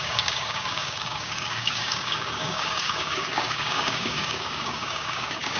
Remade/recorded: remade